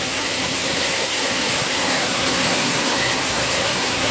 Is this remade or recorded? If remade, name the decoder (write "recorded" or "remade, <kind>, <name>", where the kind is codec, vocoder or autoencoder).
remade, codec, SNAC